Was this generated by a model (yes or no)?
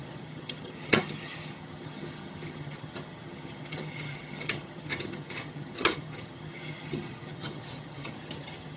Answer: yes